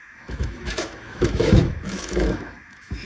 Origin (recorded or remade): remade